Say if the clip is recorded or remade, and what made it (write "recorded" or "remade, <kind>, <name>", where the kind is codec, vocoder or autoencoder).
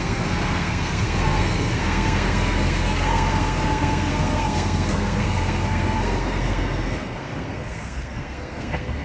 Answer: remade, codec, SNAC